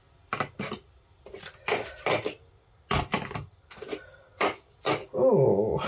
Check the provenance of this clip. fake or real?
real